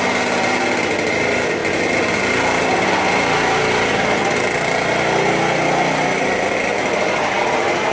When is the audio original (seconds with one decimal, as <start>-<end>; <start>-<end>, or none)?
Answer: 0.0-7.9